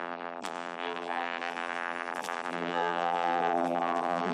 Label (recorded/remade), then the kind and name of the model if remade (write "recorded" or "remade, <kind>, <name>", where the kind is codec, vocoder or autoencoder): remade, vocoder, BigVGAN v2